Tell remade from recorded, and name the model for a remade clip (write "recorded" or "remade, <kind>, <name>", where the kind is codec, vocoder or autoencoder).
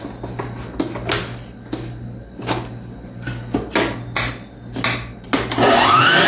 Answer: recorded